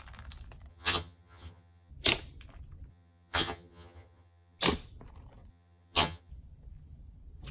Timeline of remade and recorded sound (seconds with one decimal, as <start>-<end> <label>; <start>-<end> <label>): 0.0-0.7 recorded; 0.7-1.9 remade; 1.9-2.9 recorded; 2.9-4.6 remade; 4.6-5.5 recorded; 5.5-6.3 remade; 6.3-7.5 recorded